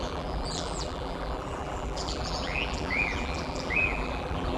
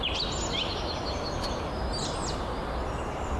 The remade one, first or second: first